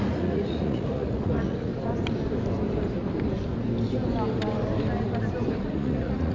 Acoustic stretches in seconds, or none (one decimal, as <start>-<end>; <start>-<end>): 1.7-5.5